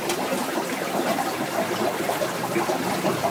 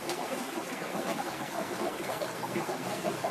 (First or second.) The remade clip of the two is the second